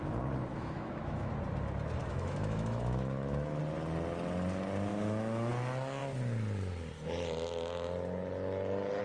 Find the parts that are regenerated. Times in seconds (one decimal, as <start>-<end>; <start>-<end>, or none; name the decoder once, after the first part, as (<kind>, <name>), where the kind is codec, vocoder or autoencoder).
0.5-1.3 (autoencoder, DAC-VAE); 2.0-3.6; 4.9-5.5